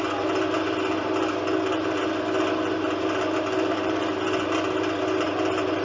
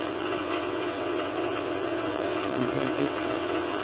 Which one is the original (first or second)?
first